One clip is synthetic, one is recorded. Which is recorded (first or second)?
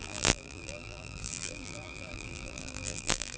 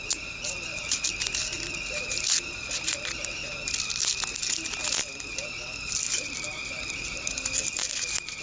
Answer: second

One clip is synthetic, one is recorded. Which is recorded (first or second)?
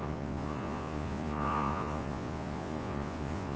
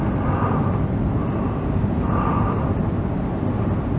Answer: second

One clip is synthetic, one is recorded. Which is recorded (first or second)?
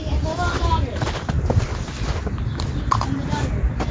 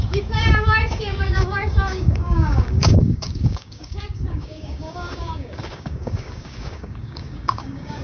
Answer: first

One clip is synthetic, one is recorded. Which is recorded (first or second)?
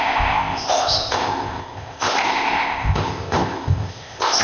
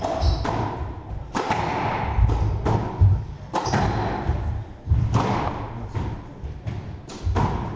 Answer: second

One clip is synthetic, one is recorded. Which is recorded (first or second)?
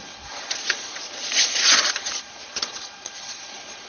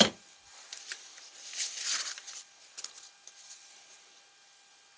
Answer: second